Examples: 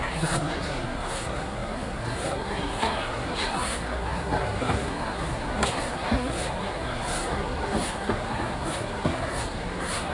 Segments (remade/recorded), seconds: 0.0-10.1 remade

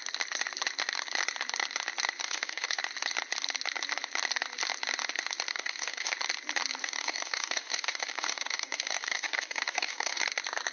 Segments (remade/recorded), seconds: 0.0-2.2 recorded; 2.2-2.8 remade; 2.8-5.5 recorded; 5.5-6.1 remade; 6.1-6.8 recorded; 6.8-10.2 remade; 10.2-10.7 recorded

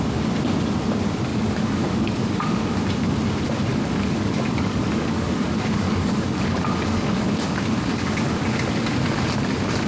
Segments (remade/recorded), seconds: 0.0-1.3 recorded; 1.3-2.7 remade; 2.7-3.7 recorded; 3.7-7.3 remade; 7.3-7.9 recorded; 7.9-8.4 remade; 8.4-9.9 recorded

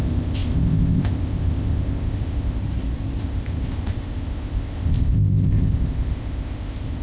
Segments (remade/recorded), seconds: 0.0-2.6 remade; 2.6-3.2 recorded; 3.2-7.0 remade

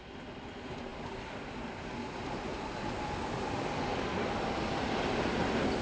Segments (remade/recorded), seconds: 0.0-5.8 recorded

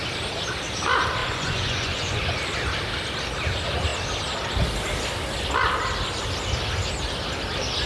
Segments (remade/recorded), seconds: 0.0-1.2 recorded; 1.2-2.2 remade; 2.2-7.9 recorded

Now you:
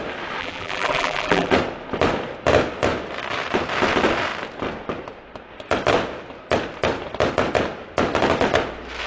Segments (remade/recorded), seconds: 0.0-0.4 recorded; 0.4-1.5 remade; 1.5-9.1 recorded

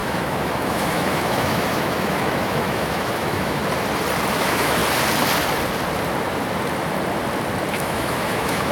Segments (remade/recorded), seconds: 0.0-3.6 remade; 3.6-4.3 recorded; 4.3-4.8 remade; 4.8-7.7 recorded; 7.7-8.7 remade